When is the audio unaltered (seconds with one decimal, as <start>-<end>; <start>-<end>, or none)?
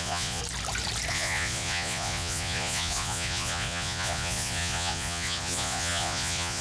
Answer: 0.4-1.1